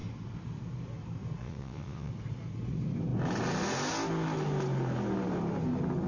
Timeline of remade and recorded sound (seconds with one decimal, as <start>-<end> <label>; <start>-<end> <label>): 0.0-1.4 recorded; 1.4-2.1 remade; 2.1-6.1 recorded